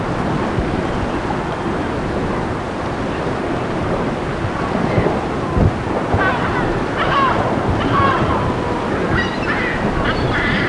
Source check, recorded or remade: recorded